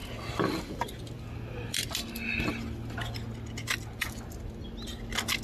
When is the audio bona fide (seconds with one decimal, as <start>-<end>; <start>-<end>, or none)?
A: 0.0-5.4